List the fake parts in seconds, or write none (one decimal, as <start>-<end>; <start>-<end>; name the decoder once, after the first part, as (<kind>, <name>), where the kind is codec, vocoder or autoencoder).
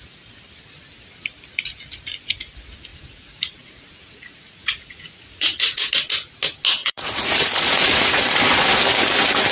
2.9-5.9 (vocoder, Vocos); 6.8-8.2